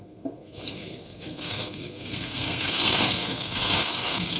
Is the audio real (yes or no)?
no